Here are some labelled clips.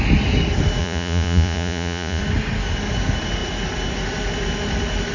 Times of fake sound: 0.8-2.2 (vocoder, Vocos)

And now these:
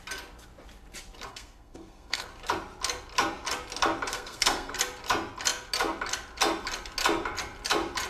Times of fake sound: 1.3-2.3 (codec, SNAC); 4.1-4.7

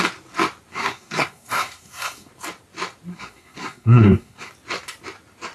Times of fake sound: 0.7-2.3 (codec, SNAC); 3.1-4.5

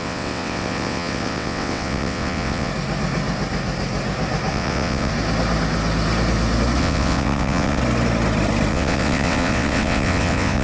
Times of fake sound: 0.0-2.7 (vocoder, WaveNeXt); 4.5-5.1; 6.8-7.8; 8.7-10.6

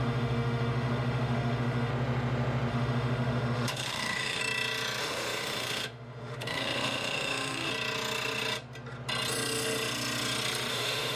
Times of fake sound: 0.0-1.9 (autoencoder, DAC-VAE); 2.7-4.4; 5.0-7.7; 10.7-11.2